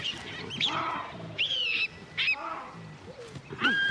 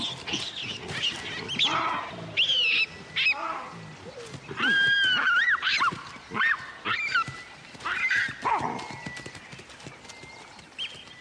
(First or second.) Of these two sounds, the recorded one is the second